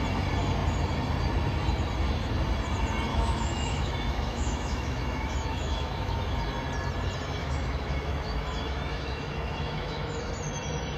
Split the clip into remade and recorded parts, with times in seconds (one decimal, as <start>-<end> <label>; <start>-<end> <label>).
0.0-3.1 recorded; 3.1-6.4 remade; 6.4-7.4 recorded; 7.4-10.3 remade; 10.3-11.0 recorded